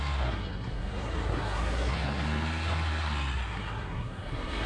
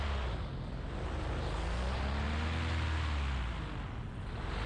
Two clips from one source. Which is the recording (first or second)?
second